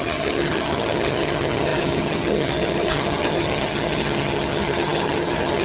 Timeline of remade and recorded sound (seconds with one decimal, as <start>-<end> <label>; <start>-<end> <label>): 0.0-5.6 remade